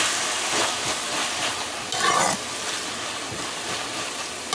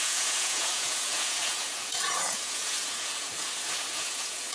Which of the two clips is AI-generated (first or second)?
second